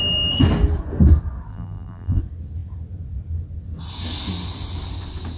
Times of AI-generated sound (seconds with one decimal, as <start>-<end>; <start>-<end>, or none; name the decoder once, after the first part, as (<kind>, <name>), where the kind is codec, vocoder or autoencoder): 1.5-2.2 (vocoder, BigVGAN v2)